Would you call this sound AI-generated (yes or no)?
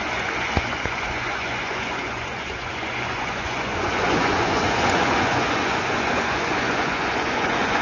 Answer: yes